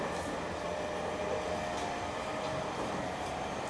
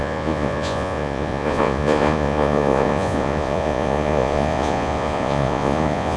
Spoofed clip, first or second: second